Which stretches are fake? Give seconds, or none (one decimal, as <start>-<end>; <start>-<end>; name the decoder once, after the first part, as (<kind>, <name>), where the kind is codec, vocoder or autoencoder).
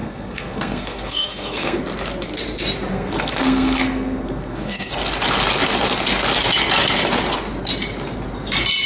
0.0-1.8 (codec, SNAC); 2.9-4.9